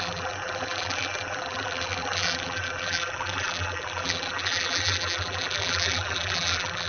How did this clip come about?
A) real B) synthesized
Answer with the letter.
B